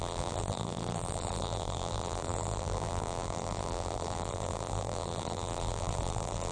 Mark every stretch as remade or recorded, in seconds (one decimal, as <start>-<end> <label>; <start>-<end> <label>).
0.0-6.5 remade